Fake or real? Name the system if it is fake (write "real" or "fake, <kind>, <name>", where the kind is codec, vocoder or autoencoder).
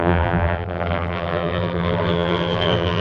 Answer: fake, vocoder, BigVGAN v2